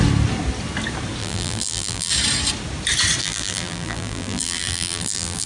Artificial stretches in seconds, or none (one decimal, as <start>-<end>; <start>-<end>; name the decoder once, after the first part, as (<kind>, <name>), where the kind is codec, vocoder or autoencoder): 1.2-2.1 (vocoder, BigVGAN v2); 3.2-5.5